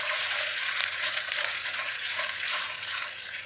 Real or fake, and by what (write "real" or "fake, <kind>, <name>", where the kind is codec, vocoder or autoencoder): fake, vocoder, Vocos